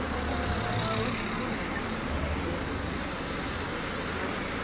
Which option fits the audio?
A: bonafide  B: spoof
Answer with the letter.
A